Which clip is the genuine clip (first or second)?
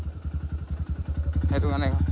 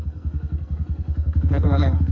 first